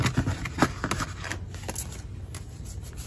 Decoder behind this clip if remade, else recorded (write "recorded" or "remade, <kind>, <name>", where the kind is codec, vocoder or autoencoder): recorded